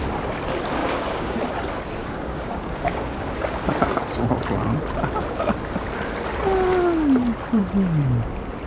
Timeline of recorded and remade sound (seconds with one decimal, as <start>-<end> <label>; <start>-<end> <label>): 0.0-0.8 recorded; 0.8-1.4 remade; 1.4-2.0 recorded; 2.0-3.7 remade; 3.7-8.7 recorded